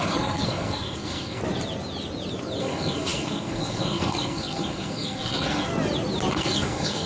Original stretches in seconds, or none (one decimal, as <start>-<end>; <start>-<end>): 1.4-2.6; 5.7-6.3